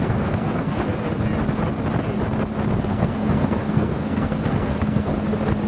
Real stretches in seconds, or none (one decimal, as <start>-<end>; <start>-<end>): 0.9-2.8; 5.1-5.7

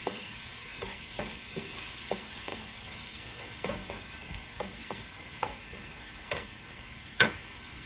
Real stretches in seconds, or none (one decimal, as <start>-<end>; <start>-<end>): none

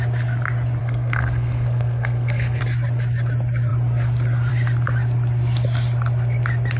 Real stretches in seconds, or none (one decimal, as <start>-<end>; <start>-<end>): 0.0-0.8; 2.6-6.8

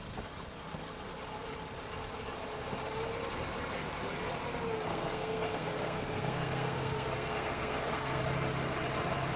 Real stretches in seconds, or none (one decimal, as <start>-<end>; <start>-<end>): 0.0-4.9; 8.2-9.4

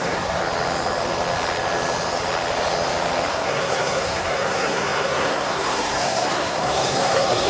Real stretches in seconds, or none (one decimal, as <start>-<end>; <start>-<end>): 0.4-3.3

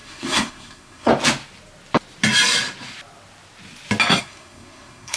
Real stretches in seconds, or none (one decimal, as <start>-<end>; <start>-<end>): 1.1-4.2